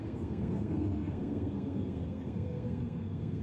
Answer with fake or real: fake